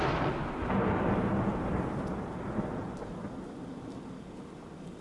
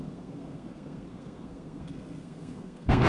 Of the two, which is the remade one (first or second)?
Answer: second